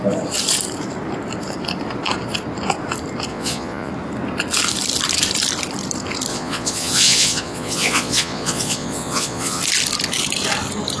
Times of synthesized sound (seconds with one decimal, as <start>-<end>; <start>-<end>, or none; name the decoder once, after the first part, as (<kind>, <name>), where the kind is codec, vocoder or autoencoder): 3.3-3.9 (vocoder, Vocos); 6.3-9.6